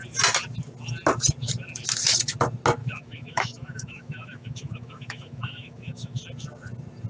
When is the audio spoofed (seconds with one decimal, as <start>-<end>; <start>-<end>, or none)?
2.8-6.2